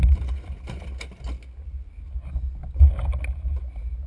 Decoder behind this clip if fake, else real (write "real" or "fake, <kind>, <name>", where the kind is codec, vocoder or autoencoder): real